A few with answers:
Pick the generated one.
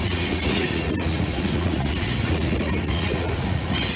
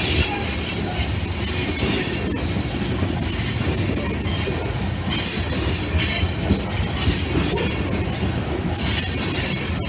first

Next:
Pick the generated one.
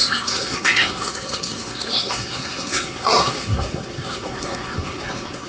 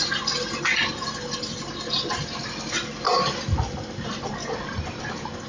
first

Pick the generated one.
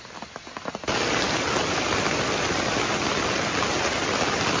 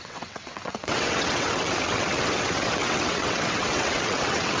second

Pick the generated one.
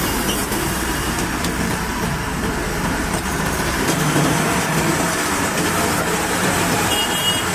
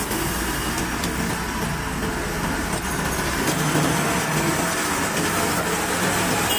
first